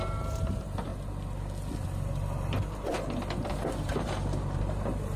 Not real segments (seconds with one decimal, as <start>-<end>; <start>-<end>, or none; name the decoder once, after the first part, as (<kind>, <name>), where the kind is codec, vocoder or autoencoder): 0.0-0.9 (vocoder, BigVGAN v2); 3.8-5.2